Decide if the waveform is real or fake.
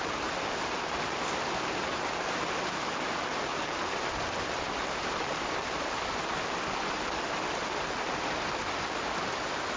real